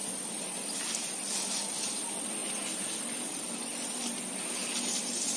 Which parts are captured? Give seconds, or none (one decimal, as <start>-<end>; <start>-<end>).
0.0-5.4